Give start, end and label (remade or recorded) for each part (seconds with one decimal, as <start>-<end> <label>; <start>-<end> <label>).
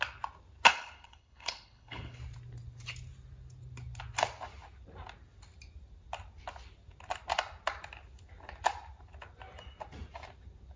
0.0-0.7 recorded; 0.7-2.2 remade; 2.2-10.8 recorded